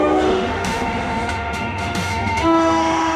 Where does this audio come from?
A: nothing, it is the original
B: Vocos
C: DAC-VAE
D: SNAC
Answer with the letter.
C